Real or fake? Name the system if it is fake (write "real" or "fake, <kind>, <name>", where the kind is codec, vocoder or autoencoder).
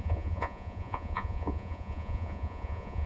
fake, vocoder, Vocos